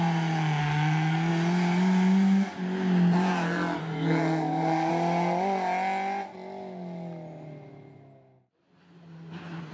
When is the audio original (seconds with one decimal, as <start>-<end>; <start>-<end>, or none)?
0.0-0.6; 1.3-3.8; 4.9-9.7